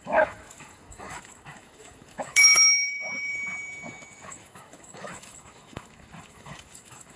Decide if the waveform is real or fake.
fake